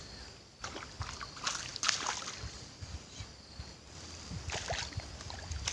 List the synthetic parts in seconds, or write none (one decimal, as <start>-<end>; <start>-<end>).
none